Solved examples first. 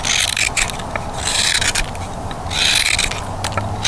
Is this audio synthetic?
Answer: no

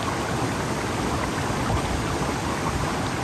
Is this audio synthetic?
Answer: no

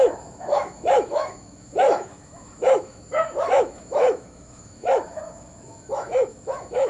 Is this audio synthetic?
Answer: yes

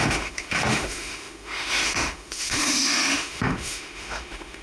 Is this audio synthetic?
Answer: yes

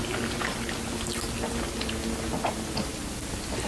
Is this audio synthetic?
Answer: no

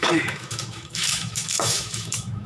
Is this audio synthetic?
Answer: yes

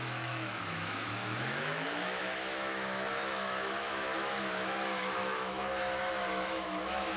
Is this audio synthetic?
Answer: yes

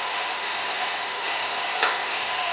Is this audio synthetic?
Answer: yes